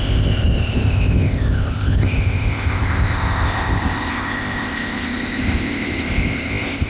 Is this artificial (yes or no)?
yes